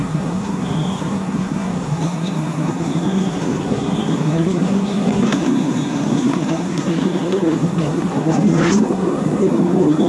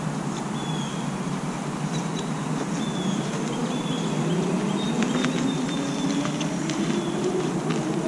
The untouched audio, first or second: second